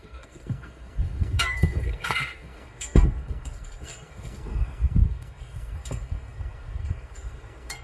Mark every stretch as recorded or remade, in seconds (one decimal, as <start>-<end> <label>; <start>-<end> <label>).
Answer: 0.0-7.8 remade